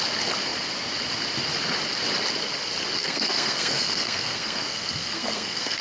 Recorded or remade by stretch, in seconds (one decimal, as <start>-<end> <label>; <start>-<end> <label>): 0.0-3.0 recorded; 3.0-5.8 remade